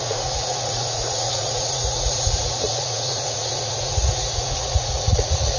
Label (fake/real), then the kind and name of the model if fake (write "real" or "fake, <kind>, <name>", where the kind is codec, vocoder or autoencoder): fake, vocoder, Vocos